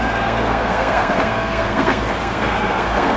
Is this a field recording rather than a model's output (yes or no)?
no